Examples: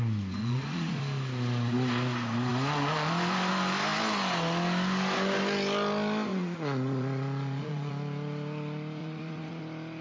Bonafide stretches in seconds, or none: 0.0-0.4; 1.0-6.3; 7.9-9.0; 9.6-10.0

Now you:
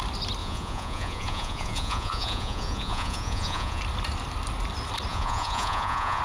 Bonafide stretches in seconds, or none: 0.0-0.4; 3.8-5.1

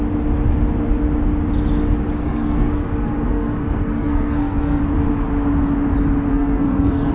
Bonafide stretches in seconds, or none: 0.0-2.2; 4.8-6.3

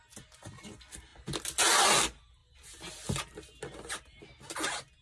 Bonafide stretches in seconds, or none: 0.0-5.0

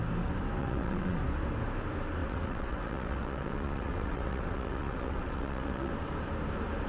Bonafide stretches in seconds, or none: 0.0-0.6; 1.2-2.2; 5.9-6.9

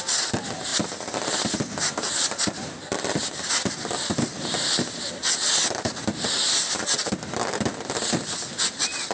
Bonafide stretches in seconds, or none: 0.0-9.1

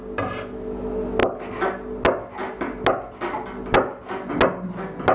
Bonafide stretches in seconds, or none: 0.0-5.1